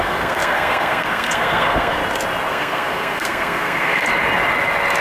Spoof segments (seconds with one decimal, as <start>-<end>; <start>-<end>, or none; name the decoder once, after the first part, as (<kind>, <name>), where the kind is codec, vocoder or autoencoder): 0.0-2.0 (codec, SNAC); 2.5-4.1